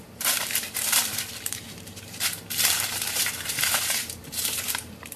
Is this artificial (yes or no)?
yes